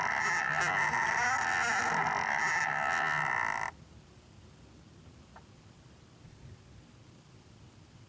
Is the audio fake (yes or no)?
no